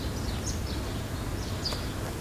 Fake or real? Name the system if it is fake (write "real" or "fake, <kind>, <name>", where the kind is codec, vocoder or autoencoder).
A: real